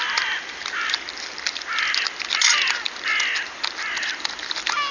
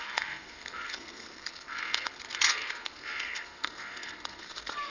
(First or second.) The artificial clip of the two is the second